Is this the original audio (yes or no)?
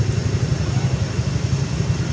yes